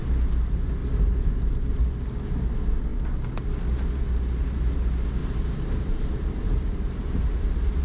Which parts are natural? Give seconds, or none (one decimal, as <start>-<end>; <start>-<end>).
0.0-0.8; 1.8-5.2